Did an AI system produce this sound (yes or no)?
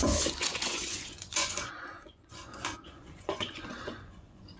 yes